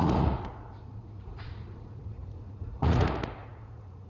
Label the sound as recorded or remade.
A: remade